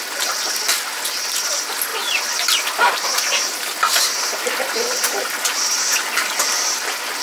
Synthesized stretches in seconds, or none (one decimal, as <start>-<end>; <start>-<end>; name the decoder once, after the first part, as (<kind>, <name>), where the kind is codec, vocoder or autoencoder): none